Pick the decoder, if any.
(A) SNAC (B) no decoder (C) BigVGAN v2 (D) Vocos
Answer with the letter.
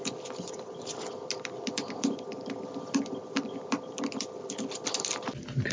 B